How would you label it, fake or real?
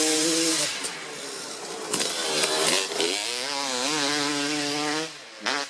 real